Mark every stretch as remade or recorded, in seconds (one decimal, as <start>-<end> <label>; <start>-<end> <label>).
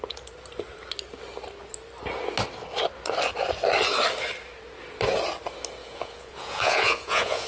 0.0-5.8 recorded; 5.8-7.5 remade